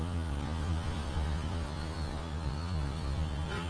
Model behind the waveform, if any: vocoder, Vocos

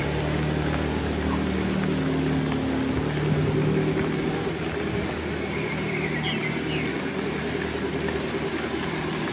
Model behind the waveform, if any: none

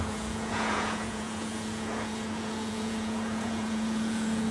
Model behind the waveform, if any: vocoder, Vocos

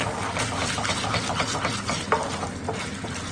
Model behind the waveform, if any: none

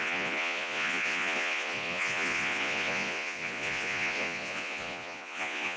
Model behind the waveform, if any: vocoder, Vocos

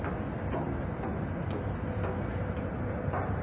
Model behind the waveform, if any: none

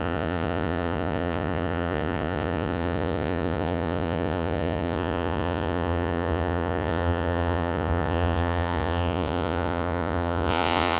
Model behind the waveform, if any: vocoder, Vocos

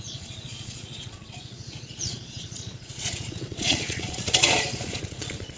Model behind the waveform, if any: vocoder, Vocos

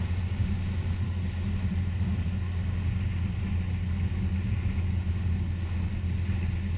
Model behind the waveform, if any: none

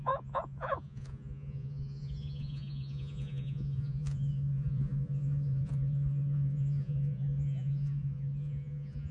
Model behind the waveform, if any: vocoder, Vocos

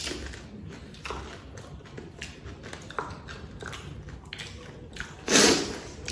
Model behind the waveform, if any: none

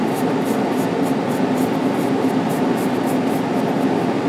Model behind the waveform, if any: none